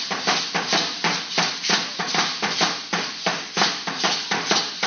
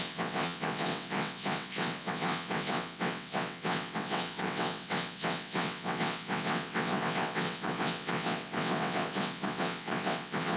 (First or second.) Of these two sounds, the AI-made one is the second